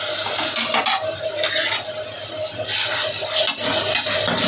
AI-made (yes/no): no